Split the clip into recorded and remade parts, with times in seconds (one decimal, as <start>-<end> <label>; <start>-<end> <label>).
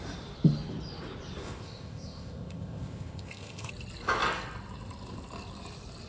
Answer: 0.0-1.4 recorded; 1.4-3.7 remade; 3.7-6.1 recorded